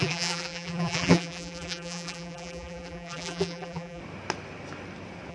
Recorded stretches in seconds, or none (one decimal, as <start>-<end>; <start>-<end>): 4.0-5.3

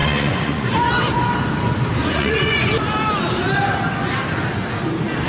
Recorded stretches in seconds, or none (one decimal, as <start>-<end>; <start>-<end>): 1.0-2.0; 2.7-5.3

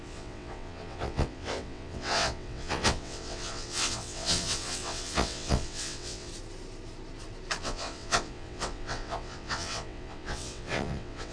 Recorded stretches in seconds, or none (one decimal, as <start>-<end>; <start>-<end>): 6.3-7.6

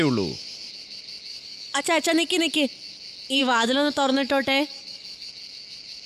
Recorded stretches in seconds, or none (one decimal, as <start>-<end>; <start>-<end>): 0.0-1.3; 1.8-3.4; 5.3-6.1